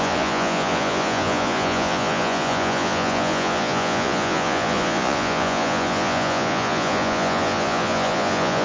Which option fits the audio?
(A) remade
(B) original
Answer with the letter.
A